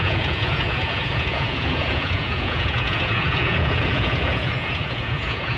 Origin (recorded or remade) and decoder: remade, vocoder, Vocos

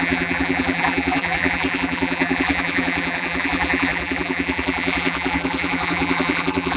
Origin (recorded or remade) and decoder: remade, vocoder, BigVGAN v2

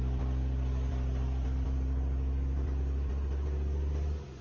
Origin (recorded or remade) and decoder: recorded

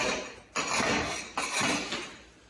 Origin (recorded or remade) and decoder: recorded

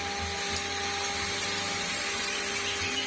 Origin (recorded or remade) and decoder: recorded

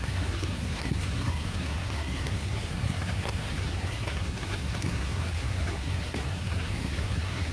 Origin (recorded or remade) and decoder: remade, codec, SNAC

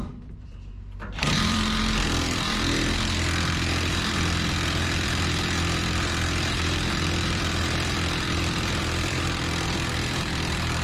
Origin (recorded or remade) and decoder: remade, vocoder, BigVGAN v2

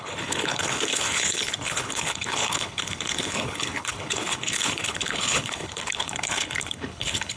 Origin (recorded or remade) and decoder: remade, codec, HILCodec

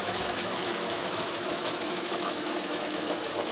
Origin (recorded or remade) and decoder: remade, autoencoder, DAC-VAE